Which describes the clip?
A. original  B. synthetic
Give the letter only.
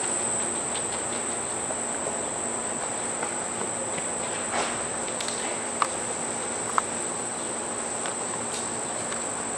A